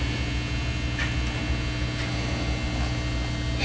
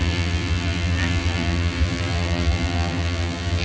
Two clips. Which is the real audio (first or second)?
first